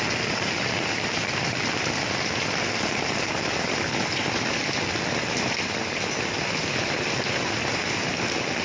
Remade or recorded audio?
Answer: remade